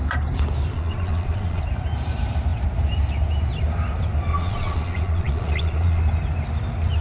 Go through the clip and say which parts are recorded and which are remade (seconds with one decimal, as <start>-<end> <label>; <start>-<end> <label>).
0.0-0.7 recorded; 0.7-1.6 remade; 1.6-4.3 recorded; 4.3-6.0 remade; 6.0-7.0 recorded